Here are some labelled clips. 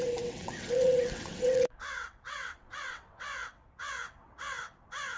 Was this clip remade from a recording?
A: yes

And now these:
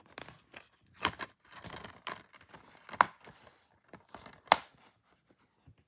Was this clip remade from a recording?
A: no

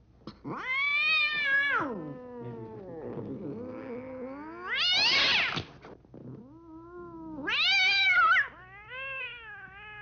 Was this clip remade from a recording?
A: no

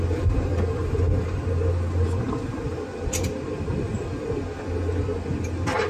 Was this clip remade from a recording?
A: no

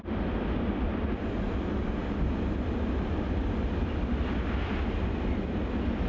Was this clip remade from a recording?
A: no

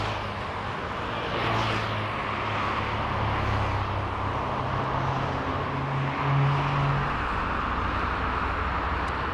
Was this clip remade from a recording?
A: no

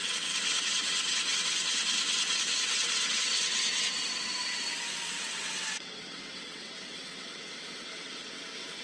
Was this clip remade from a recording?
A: yes